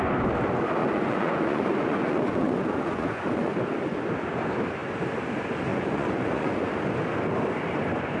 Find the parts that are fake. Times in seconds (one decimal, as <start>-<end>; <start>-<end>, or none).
0.8-3.5; 5.7-6.7